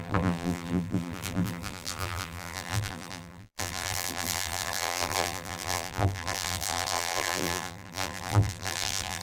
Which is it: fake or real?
fake